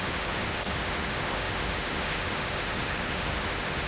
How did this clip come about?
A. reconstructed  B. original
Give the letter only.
A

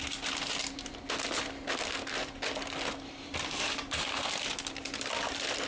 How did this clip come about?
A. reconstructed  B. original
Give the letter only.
B